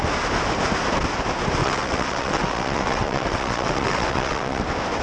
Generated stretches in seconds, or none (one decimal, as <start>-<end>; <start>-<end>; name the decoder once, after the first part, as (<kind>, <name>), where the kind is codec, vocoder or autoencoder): 1.6-4.6 (vocoder, WaveNeXt)